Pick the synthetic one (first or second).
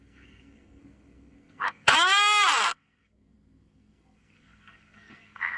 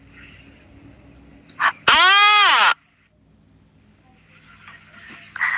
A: first